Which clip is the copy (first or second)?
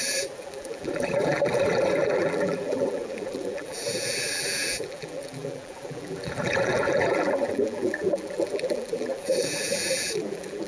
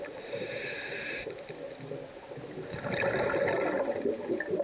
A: first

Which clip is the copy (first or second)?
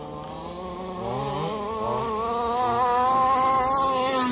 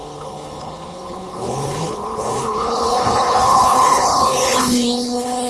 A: second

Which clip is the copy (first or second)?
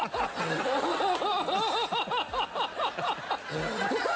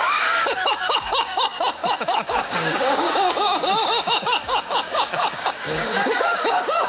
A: second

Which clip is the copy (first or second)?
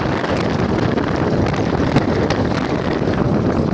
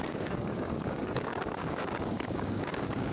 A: second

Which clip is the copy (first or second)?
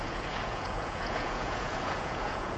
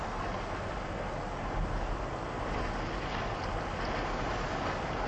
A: first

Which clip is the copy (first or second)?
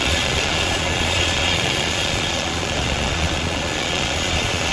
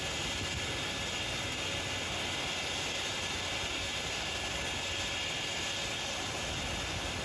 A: first